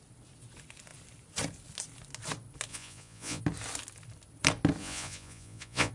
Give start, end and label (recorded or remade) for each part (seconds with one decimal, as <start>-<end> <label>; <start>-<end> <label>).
0.0-2.7 recorded; 2.7-3.4 remade; 3.4-4.8 recorded; 4.8-5.9 remade